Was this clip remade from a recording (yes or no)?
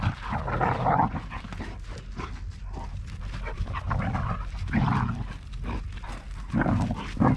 no